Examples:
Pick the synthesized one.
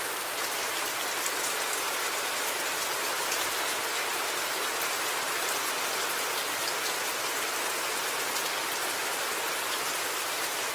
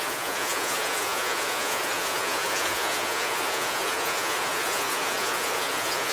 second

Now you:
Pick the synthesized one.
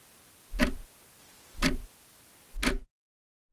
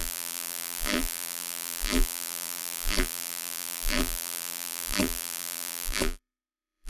second